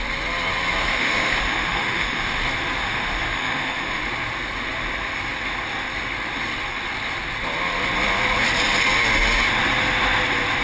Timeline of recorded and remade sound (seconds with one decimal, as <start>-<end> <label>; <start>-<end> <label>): 0.0-0.8 recorded; 0.8-2.4 remade; 2.4-2.8 recorded; 2.8-4.0 remade; 4.0-10.6 recorded